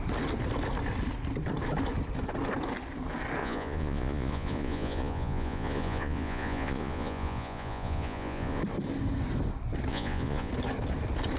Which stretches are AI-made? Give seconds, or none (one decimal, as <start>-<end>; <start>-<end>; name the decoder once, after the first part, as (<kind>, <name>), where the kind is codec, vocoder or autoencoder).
3.4-8.6 (vocoder, Vocos); 9.9-10.5